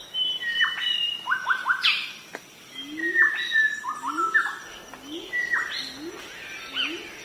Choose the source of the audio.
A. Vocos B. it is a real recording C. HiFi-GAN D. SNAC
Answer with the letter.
B